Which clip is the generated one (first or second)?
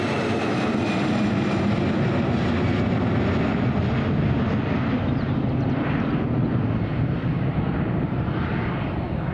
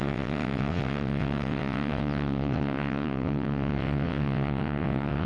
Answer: second